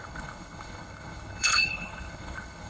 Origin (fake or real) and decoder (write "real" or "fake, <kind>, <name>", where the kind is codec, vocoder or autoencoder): fake, codec, HILCodec